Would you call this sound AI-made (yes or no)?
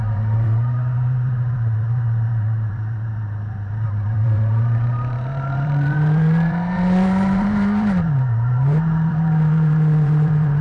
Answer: yes